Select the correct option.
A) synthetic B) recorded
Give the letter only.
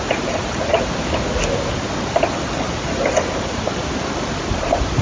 B